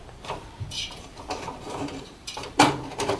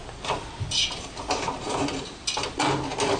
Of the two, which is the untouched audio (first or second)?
second